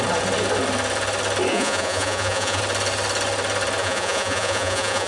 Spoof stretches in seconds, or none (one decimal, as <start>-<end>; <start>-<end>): 1.5-2.6; 3.8-5.1